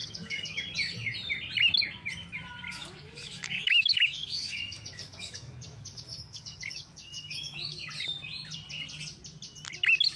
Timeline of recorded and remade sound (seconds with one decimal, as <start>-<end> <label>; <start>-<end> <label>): 0.0-0.6 remade; 0.6-2.7 recorded; 2.7-7.9 remade; 7.9-10.2 recorded